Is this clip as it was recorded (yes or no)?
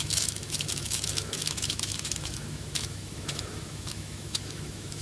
no